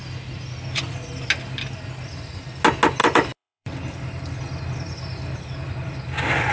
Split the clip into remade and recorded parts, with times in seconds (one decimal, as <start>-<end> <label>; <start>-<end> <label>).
0.0-3.0 recorded; 3.0-4.6 remade; 4.6-6.5 recorded